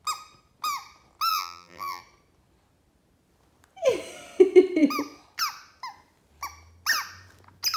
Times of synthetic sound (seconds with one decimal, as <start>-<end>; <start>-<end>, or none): 1.3-2.0